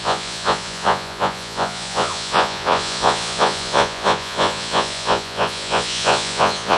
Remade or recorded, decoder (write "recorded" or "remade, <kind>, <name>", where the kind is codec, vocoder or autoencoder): remade, vocoder, Vocos